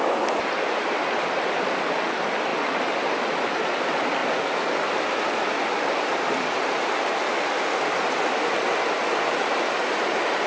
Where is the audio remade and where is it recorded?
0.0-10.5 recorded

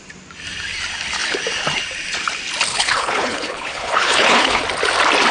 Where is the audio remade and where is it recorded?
0.0-2.7 recorded; 2.7-4.6 remade; 4.6-5.3 recorded

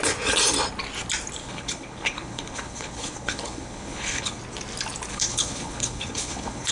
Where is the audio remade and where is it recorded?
0.0-1.4 recorded; 1.4-4.4 remade; 4.4-5.1 recorded; 5.1-6.7 remade

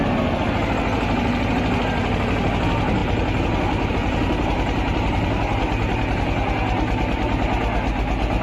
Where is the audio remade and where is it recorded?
0.0-8.4 recorded

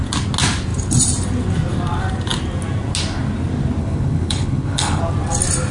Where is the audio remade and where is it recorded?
0.0-3.8 recorded; 3.8-5.0 remade; 5.0-5.7 recorded